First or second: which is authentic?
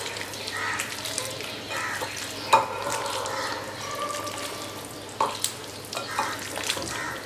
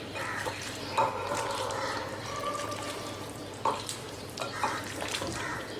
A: first